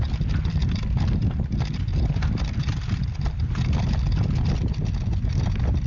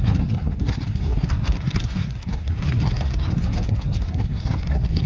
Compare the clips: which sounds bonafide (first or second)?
first